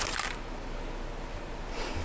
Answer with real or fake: real